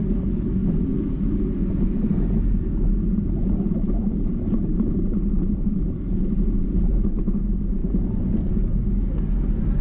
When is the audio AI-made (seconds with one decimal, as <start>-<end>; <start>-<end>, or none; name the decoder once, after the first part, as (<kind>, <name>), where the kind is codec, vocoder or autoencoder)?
3.4-6.9 (vocoder, BigVGAN v2)